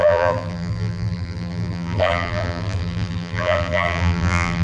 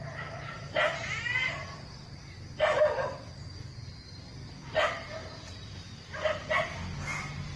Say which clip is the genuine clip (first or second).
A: second